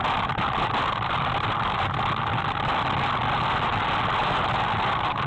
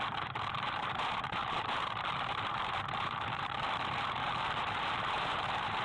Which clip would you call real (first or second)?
first